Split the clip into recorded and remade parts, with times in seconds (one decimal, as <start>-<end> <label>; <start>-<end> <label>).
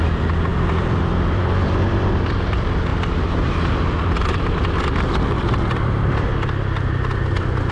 0.0-6.3 remade; 6.3-7.3 recorded; 7.3-7.7 remade